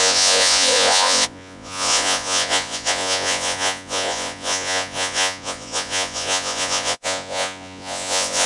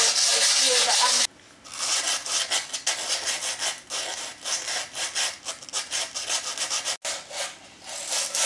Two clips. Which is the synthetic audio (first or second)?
first